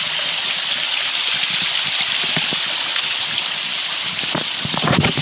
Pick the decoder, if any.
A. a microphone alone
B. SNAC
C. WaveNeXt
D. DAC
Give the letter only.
A